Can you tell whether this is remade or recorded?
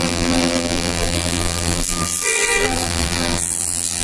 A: remade